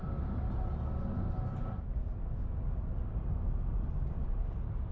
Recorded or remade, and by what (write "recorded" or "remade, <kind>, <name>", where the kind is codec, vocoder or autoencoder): recorded